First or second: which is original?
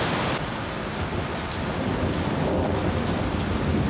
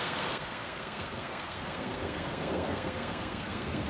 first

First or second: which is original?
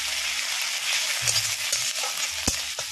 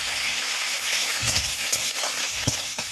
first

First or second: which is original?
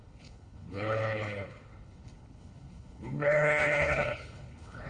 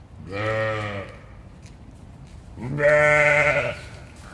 second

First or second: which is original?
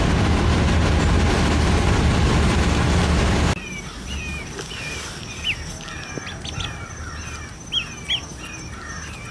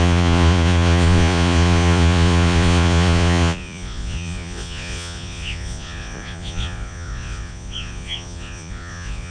first